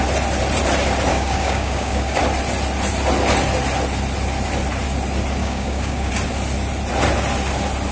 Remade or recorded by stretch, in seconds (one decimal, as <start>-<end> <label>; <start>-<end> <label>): 0.0-1.1 recorded; 1.1-2.2 remade; 2.2-5.4 recorded; 5.4-6.1 remade; 6.1-7.9 recorded